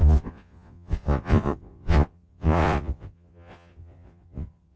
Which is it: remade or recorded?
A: remade